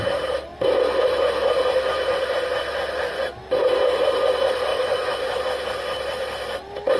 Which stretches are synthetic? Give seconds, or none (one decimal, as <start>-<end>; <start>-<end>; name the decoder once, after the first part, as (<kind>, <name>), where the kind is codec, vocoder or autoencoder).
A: 4.7-5.4 (autoencoder, DAC-VAE)

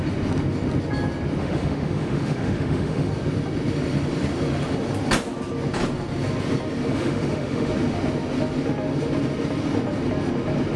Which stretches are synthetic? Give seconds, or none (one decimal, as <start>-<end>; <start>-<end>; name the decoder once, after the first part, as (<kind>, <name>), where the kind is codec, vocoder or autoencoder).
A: 1.4-3.1 (autoencoder, DAC-VAE); 6.9-7.7

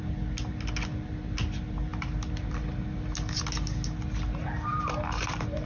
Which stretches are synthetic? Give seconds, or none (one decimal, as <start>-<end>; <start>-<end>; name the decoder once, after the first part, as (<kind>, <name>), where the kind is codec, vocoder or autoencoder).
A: none

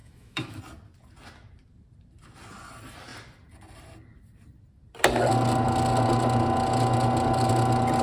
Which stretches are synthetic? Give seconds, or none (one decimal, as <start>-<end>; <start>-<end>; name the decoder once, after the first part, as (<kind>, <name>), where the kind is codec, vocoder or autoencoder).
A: 0.0-0.6 (autoencoder, DAC-VAE)

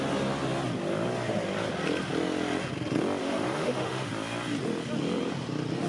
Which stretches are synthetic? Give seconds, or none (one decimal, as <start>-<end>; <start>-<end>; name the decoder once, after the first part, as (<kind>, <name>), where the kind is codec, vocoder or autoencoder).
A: 3.2-4.1 (autoencoder, DAC-VAE)

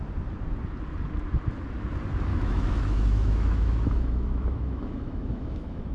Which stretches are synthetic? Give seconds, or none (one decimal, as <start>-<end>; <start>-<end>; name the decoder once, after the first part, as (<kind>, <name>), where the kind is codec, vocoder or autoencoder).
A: 2.3-5.9 (autoencoder, DAC-VAE)

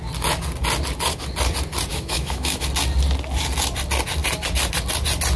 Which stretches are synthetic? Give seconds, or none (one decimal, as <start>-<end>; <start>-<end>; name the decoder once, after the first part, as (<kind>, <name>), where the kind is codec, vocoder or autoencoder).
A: 1.9-2.6 (autoencoder, DAC-VAE)